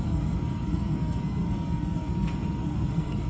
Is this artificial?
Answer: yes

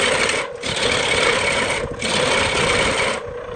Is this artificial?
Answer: no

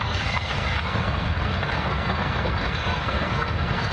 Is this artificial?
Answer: yes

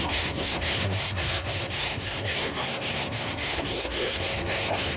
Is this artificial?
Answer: yes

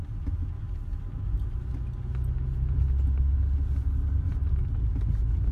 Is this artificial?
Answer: no